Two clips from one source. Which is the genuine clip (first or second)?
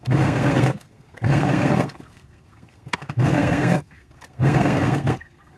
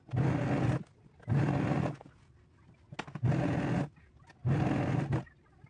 second